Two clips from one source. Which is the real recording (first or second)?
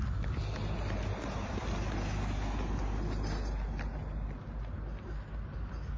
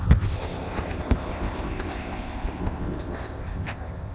first